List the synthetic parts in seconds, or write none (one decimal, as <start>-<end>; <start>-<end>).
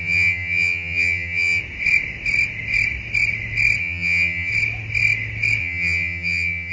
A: 0.0-1.6; 3.8-4.5; 5.6-6.7